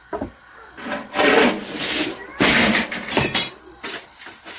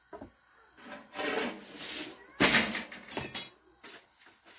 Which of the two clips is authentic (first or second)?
second